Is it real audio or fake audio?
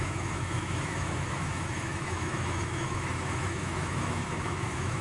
fake